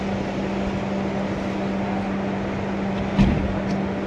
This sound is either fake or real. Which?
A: real